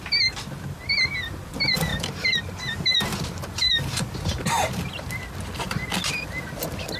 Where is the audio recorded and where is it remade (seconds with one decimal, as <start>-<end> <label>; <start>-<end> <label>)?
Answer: 0.0-7.0 recorded